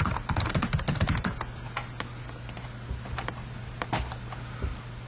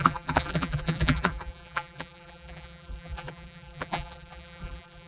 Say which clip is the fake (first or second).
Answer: second